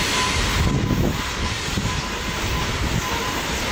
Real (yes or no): yes